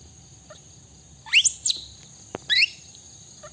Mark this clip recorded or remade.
recorded